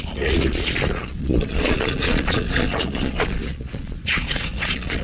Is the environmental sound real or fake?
fake